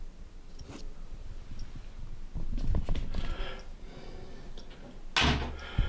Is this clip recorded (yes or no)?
yes